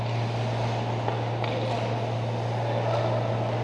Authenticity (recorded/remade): recorded